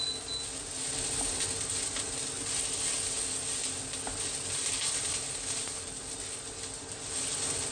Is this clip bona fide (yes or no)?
yes